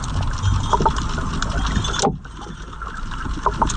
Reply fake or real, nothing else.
real